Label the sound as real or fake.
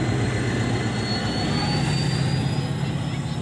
real